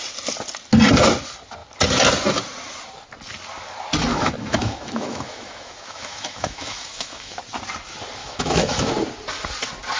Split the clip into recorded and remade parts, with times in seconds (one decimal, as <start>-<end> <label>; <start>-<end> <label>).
0.0-4.1 recorded; 4.1-7.4 remade; 7.4-8.2 recorded; 8.2-8.9 remade; 8.9-10.0 recorded